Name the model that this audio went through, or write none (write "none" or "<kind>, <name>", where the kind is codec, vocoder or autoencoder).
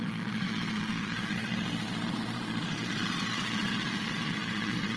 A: vocoder, Vocos